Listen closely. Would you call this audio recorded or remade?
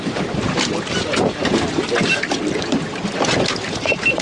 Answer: recorded